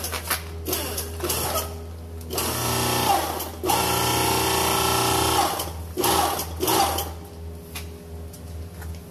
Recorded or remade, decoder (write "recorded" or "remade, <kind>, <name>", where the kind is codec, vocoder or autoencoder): recorded